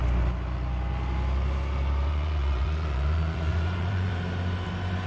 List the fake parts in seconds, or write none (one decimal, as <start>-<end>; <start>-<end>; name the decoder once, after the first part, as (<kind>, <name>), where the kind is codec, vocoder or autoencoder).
2.1-4.1 (vocoder, Vocos)